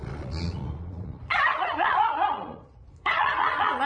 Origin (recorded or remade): remade